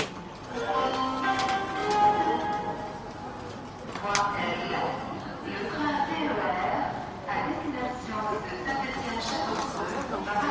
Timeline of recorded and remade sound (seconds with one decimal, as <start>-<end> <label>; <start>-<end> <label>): 0.0-10.5 recorded